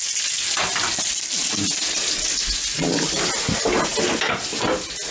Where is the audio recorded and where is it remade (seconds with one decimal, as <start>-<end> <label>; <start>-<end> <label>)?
0.0-1.5 recorded; 1.5-3.4 remade; 3.4-5.1 recorded